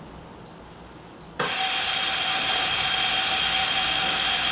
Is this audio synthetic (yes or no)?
no